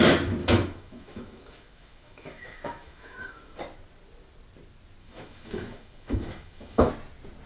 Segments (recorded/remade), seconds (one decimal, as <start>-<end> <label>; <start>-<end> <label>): 0.0-0.4 recorded; 0.4-3.6 remade; 3.6-5.0 recorded; 5.0-6.9 remade; 6.9-7.5 recorded